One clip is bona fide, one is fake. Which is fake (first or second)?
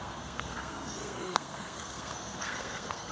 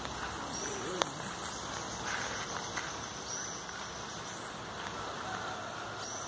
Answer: first